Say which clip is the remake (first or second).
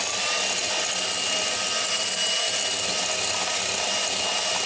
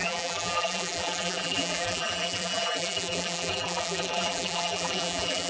second